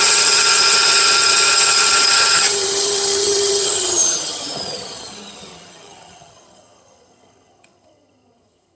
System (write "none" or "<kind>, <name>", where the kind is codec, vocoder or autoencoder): vocoder, HiFi-GAN